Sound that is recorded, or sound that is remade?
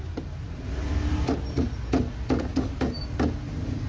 recorded